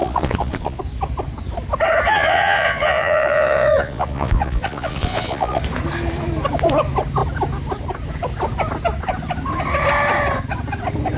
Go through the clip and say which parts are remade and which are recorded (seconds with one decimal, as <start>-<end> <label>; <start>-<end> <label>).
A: 0.0-0.8 remade; 0.8-2.1 recorded; 2.1-5.6 remade; 5.6-11.2 recorded